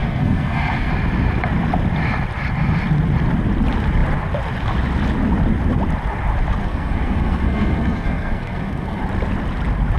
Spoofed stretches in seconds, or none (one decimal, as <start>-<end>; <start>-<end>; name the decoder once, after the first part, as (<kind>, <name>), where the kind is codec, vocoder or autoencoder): 0.0-0.9 (codec, SNAC); 6.6-9.0